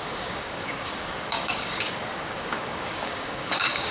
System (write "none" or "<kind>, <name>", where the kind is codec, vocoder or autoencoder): codec, DAC